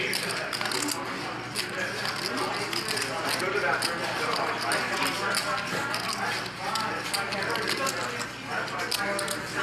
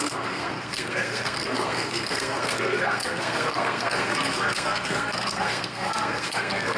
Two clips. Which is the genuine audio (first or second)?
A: first